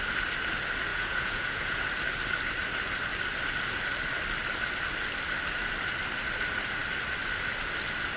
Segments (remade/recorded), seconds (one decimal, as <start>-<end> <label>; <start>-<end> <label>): 0.0-0.9 recorded; 0.9-1.8 remade; 1.8-8.2 recorded